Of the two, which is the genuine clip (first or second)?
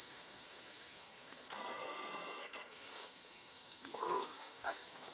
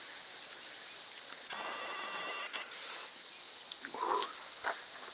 second